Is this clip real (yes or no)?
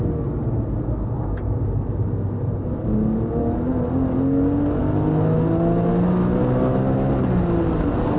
yes